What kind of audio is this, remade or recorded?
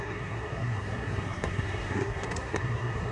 remade